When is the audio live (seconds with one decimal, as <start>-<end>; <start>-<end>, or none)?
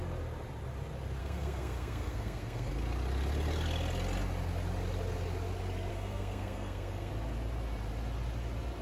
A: 0.0-1.2; 2.7-5.9; 7.1-8.8